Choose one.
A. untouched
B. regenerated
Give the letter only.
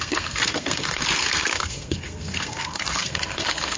B